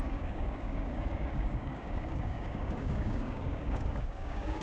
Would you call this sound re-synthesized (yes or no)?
yes